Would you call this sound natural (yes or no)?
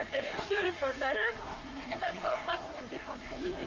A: no